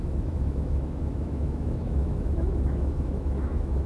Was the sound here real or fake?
fake